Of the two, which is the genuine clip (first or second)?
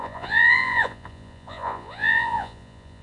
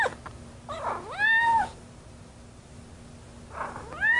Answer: second